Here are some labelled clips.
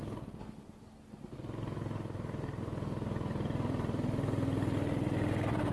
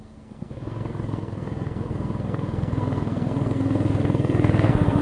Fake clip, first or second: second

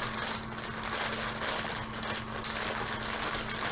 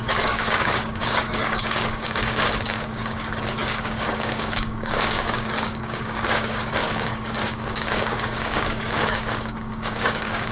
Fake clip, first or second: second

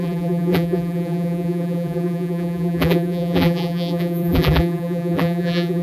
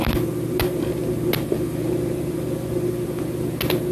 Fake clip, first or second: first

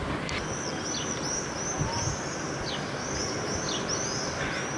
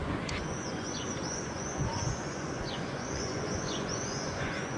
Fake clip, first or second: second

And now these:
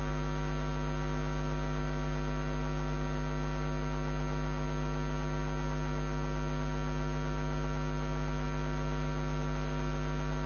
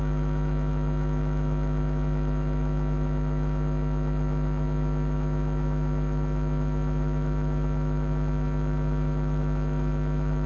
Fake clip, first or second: second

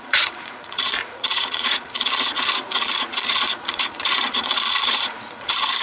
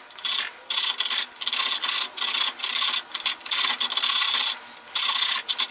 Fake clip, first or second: first